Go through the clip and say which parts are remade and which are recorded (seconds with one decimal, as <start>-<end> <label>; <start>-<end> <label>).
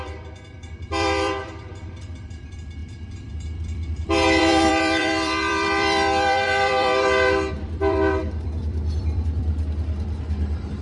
0.0-10.8 remade